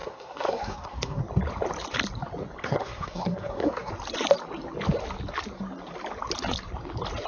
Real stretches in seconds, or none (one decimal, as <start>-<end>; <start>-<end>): 1.2-2.6; 3.9-7.3

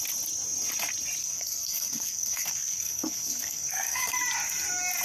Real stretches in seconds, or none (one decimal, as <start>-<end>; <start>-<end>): 0.0-1.2; 4.2-5.0

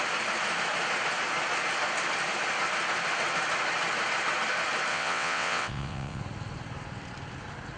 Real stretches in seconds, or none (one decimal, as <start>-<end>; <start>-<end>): 0.0-4.9; 6.2-7.8

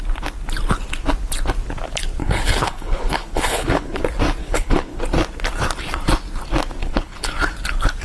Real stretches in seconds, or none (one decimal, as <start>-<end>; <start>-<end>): 0.0-2.2; 4.0-4.4; 5.0-6.8; 7.3-8.0

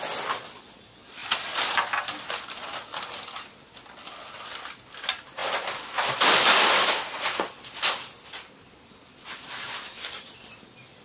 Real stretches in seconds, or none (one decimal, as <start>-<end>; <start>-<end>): 0.0-1.2; 2.2-11.0

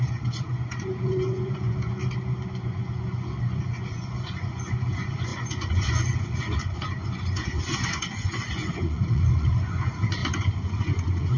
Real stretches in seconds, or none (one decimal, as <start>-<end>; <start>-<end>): 2.0-2.6

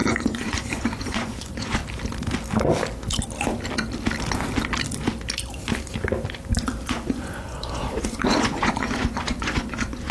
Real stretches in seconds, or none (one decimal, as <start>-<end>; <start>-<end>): 1.8-6.9

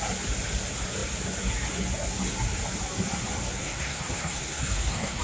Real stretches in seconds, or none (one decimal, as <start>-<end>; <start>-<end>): 0.0-3.6